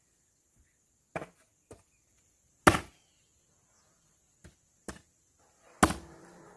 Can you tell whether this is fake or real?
real